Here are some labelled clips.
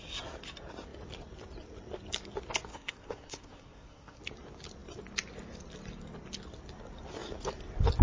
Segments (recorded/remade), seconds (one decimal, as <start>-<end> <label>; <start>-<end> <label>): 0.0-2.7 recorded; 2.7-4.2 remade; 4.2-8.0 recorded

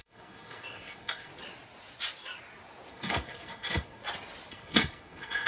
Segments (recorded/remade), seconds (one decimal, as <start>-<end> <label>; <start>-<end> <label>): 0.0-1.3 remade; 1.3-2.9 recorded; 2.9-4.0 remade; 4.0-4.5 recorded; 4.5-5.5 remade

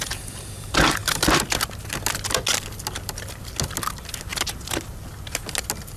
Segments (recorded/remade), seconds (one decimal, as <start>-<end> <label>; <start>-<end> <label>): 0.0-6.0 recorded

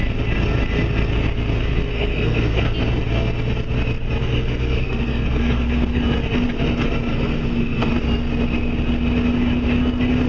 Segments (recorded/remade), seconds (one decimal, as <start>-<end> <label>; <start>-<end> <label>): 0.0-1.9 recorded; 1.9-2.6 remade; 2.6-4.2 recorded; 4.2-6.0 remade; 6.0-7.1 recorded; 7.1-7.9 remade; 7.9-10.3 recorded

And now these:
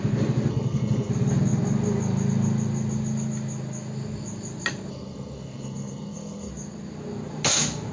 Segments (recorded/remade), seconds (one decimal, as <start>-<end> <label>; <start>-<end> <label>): 0.0-0.5 recorded; 0.5-1.1 remade; 1.1-4.9 recorded; 4.9-6.5 remade; 6.5-7.9 recorded

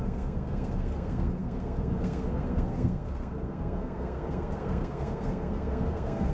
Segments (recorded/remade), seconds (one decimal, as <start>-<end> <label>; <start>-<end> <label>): 0.0-6.3 remade

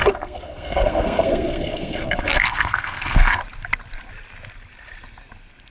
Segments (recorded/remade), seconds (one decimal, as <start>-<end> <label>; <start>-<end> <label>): 0.0-3.4 remade; 3.4-5.7 recorded